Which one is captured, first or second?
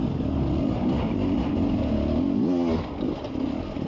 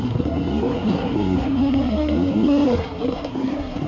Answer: first